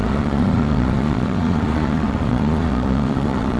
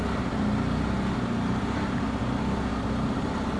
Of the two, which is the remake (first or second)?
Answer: first